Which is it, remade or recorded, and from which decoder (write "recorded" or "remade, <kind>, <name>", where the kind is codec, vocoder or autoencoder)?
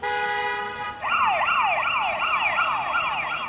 recorded